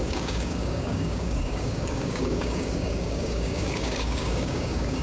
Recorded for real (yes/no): no